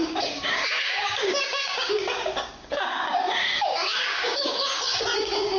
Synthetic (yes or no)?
yes